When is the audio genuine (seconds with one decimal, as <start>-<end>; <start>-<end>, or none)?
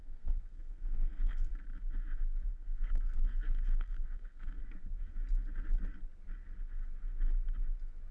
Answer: 1.5-2.5; 4.6-8.1